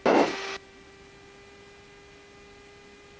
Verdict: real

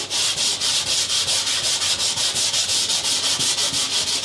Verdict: real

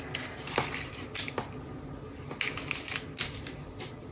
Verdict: real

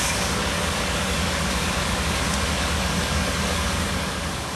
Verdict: fake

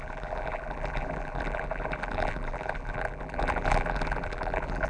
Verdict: fake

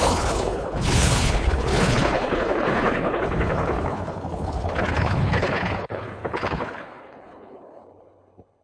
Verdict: fake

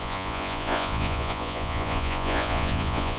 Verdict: fake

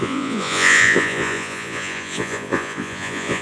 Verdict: fake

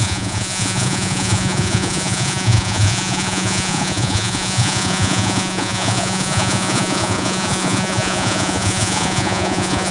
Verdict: fake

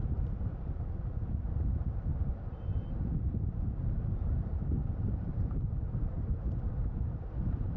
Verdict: fake